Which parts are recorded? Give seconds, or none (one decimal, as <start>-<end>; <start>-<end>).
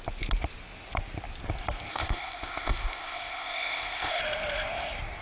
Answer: 0.0-1.9; 4.2-5.2